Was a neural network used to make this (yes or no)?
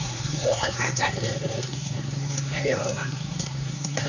yes